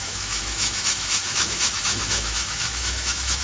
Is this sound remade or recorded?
remade